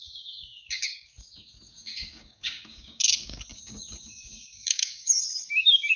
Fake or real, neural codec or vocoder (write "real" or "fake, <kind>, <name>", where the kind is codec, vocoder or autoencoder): fake, codec, DAC